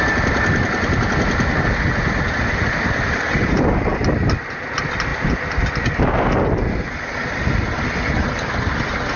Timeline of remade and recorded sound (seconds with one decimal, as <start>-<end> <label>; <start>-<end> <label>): 0.0-9.2 recorded